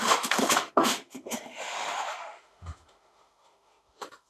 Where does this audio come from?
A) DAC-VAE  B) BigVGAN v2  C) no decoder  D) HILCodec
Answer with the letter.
A